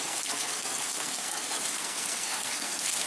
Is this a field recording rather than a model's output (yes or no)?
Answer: no